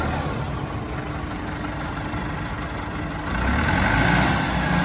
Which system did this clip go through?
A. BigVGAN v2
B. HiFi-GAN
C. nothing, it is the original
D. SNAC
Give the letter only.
C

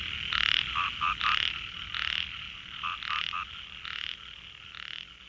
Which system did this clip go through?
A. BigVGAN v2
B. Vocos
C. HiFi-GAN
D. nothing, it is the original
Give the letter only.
D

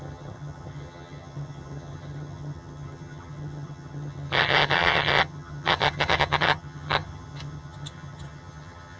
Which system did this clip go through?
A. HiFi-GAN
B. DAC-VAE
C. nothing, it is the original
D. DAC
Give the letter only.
A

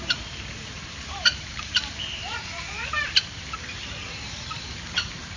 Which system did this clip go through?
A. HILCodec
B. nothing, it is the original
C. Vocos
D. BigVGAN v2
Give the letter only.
D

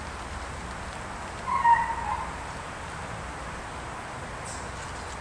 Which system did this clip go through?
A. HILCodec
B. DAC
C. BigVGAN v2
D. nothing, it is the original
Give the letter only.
D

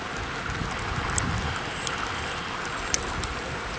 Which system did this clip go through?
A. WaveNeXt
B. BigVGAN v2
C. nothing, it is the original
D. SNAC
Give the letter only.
C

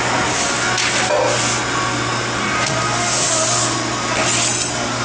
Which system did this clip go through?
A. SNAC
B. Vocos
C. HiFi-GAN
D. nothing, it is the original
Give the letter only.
D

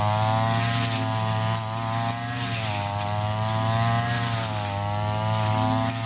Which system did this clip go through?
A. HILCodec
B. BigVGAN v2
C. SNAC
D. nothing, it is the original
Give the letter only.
D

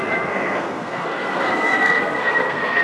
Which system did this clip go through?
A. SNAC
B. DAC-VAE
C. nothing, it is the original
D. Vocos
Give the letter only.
A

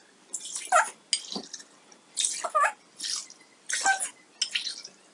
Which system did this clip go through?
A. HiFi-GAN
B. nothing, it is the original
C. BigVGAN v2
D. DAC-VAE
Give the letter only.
B